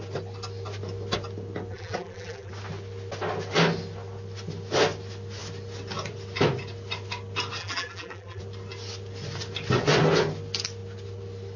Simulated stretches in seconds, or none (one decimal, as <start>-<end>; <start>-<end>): 1.7-2.5; 7.6-8.4